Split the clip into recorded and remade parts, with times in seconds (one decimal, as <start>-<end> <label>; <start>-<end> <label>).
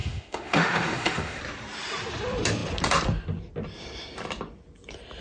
0.0-1.4 remade; 1.4-5.2 recorded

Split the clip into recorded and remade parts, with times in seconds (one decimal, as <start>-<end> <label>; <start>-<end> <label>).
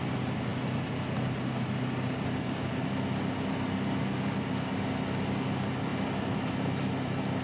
0.0-7.4 recorded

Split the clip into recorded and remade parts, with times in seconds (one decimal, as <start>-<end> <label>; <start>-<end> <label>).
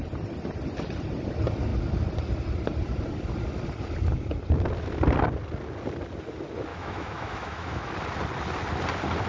0.0-6.7 recorded; 6.7-7.9 remade; 7.9-9.3 recorded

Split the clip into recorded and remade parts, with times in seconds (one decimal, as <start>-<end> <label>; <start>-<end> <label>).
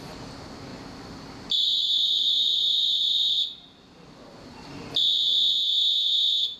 0.0-5.6 recorded; 5.6-6.6 remade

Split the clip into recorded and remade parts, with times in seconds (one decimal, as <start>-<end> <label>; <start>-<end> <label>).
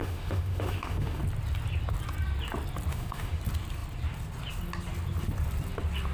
0.0-1.2 remade; 1.2-2.9 recorded; 2.9-3.4 remade; 3.4-6.1 recorded